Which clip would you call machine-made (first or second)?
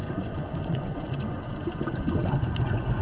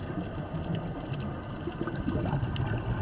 first